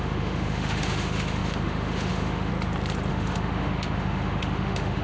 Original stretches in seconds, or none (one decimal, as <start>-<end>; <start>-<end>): 2.5-3.1